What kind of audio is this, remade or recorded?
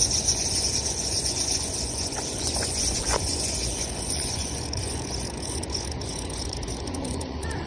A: remade